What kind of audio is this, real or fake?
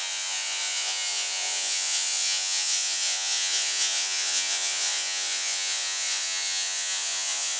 fake